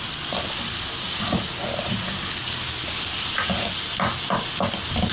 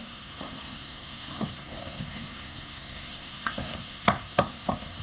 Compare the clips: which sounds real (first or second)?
first